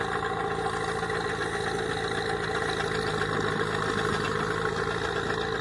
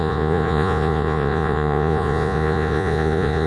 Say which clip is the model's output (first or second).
second